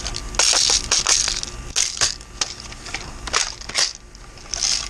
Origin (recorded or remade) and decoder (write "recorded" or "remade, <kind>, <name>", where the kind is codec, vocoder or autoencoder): recorded